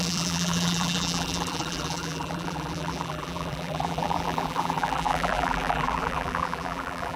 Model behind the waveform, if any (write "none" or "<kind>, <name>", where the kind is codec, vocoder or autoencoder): vocoder, BigVGAN v2